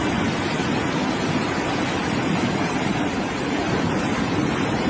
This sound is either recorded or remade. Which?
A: recorded